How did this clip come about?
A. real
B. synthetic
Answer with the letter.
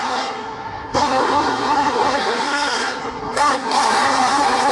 B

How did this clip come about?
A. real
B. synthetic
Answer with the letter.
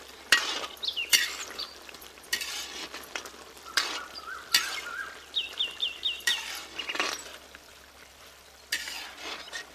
B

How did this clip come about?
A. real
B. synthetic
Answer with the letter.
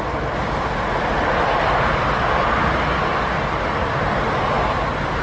A